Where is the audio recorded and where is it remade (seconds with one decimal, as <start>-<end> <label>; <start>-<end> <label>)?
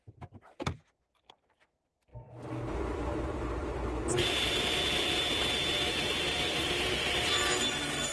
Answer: 0.0-4.1 recorded; 4.1-5.2 remade; 5.2-6.6 recorded; 6.6-8.1 remade